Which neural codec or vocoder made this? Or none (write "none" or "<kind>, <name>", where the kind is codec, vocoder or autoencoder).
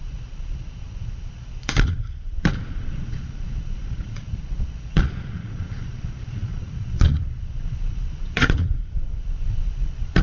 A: vocoder, Vocos